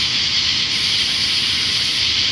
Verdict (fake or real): fake